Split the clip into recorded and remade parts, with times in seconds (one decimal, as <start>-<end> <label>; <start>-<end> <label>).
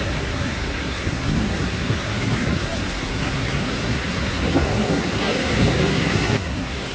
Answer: 0.0-6.9 remade